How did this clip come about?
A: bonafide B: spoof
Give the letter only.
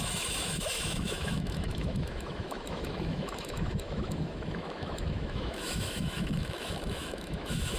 B